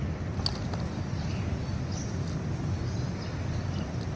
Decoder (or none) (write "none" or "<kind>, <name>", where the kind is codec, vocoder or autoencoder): none